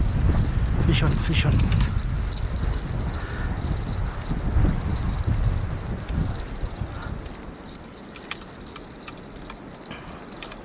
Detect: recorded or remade recorded